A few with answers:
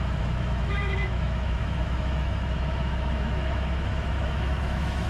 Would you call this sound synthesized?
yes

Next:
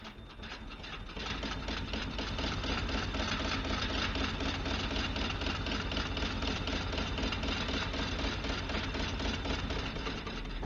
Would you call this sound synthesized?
no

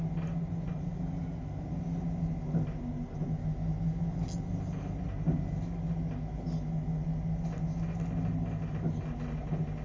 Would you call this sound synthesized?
no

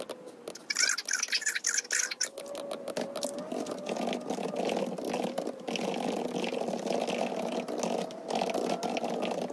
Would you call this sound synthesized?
no